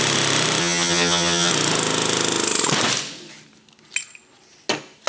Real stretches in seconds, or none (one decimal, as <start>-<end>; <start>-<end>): 0.0-0.6; 1.5-5.1